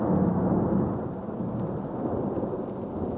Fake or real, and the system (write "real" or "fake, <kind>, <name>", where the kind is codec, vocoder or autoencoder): real